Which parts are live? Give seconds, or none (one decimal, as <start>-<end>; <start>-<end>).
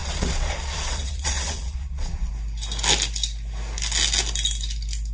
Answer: 2.3-5.1